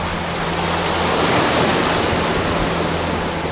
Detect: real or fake real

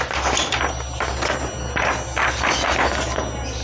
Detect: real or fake real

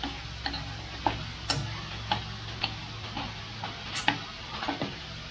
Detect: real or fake real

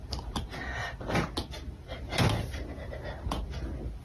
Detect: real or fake real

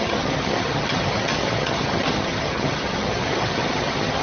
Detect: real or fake fake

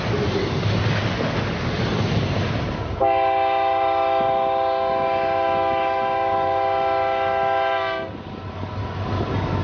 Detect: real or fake real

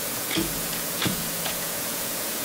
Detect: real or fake fake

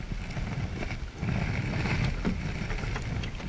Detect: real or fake real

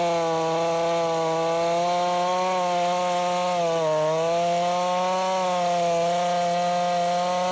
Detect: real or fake real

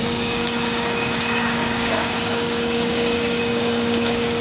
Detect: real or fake fake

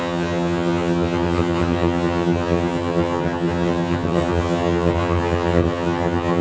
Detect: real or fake fake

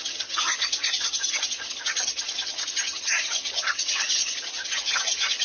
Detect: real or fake fake